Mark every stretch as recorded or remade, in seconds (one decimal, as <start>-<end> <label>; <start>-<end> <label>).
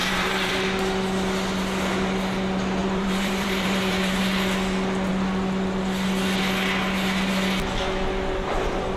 0.0-0.5 remade; 0.5-2.8 recorded; 2.8-4.2 remade; 4.2-9.0 recorded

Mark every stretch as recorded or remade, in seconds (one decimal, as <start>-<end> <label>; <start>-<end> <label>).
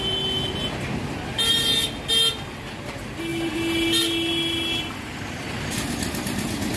0.0-6.8 recorded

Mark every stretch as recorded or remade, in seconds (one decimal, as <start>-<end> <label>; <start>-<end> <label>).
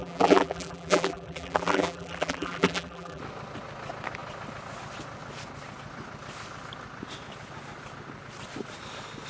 0.0-3.2 remade; 3.2-9.3 recorded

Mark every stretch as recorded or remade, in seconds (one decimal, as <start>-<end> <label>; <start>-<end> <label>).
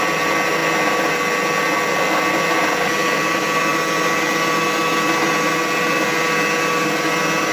0.0-7.5 recorded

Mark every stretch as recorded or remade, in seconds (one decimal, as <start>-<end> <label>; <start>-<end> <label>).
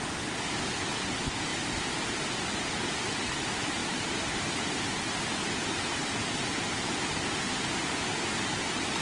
0.0-9.0 recorded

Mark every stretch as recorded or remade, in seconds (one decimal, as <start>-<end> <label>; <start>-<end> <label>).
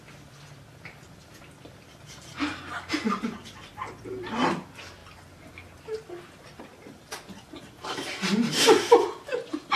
0.0-5.0 remade; 5.0-6.6 recorded; 6.6-9.8 remade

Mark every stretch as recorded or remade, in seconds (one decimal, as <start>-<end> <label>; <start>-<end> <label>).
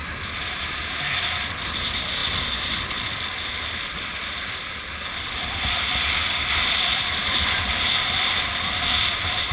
0.0-1.3 recorded; 1.3-9.5 remade